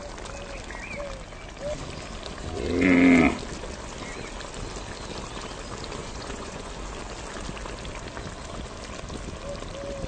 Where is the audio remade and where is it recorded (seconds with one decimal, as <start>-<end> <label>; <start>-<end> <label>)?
0.0-6.0 recorded; 6.0-6.7 remade; 6.7-10.1 recorded